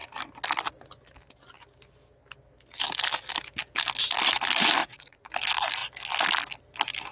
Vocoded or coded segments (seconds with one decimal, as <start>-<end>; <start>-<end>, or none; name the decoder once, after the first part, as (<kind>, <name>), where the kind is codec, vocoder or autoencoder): 4.8-5.3 (vocoder, Vocos)